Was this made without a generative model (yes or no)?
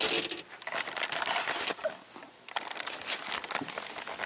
yes